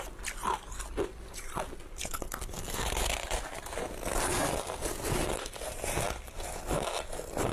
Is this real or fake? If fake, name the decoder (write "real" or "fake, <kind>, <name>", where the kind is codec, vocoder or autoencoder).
real